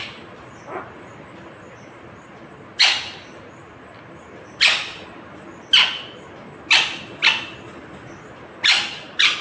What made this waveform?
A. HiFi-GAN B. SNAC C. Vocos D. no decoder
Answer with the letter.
D